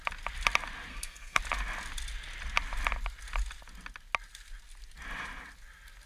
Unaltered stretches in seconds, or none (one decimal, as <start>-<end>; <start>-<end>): 0.0-0.9; 1.4-6.1

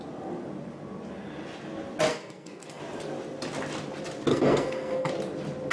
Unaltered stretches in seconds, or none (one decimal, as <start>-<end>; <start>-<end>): 0.0-2.1; 2.8-4.3; 5.1-5.7

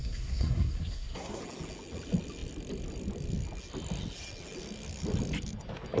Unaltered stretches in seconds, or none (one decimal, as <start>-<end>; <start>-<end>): 1.4-6.0

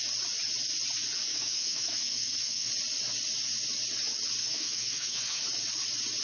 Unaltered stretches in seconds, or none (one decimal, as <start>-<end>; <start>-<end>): 0.0-1.3; 2.7-4.4; 5.4-6.2

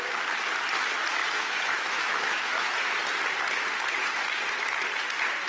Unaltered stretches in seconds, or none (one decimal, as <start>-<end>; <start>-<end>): 0.0-1.2; 3.0-5.5

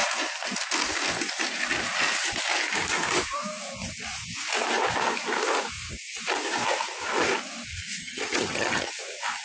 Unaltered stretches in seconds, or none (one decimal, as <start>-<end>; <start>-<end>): 0.0-8.0; 8.9-9.4

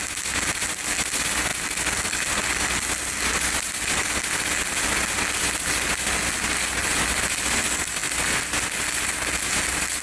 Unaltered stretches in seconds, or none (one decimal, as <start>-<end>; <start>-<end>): 0.0-10.0